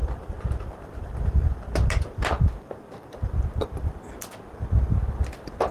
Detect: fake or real real